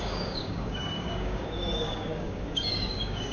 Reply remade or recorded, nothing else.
remade